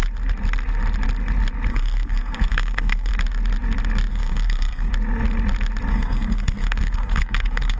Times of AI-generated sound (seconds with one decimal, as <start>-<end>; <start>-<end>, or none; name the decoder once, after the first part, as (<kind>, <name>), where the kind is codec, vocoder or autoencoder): 1.7-3.1 (codec, SNAC); 4.1-4.9; 5.9-7.8

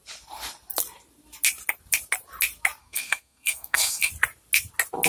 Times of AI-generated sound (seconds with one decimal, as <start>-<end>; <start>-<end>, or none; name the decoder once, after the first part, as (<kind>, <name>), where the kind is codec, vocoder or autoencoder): 2.8-4.1 (codec, SNAC)

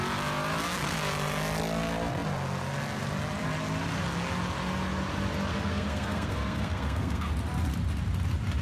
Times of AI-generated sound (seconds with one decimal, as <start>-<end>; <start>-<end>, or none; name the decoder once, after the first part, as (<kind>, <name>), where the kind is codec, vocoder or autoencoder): 5.5-7.3 (codec, SNAC)

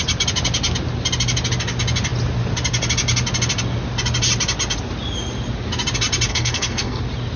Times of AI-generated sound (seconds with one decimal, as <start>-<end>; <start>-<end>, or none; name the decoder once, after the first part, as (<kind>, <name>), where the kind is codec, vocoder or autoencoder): 6.3-7.0 (codec, SNAC)

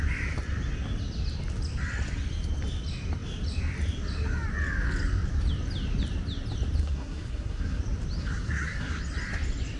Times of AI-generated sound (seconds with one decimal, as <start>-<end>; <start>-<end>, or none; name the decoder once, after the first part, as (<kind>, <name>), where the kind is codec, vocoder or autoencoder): 6.8-7.8 (codec, SNAC); 8.2-9.0

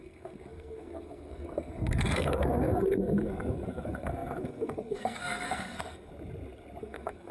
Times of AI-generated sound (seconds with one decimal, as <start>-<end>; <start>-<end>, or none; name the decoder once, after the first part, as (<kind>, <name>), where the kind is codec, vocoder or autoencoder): 0.0-6.1 (codec, SNAC); 6.8-7.3

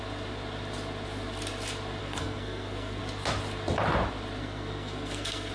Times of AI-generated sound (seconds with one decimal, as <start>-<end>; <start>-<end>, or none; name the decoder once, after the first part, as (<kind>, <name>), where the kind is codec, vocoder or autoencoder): 2.0-3.0 (codec, SNAC); 4.4-5.5